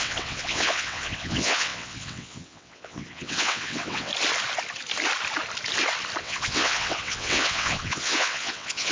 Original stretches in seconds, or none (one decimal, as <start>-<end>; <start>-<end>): 4.1-6.2